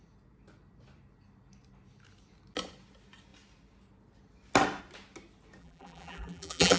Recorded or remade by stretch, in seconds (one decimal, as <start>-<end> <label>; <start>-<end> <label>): 0.0-5.6 recorded; 5.6-6.8 remade